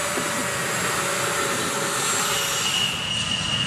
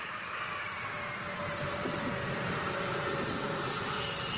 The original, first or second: first